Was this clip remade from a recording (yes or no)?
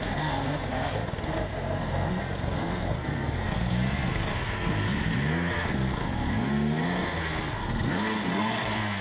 yes